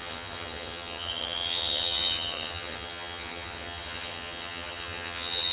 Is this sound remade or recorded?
remade